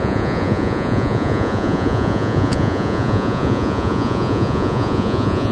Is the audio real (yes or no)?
no